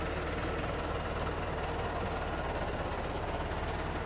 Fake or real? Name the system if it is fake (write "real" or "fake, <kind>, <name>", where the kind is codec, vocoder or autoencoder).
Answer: real